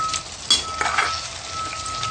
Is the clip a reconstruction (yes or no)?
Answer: no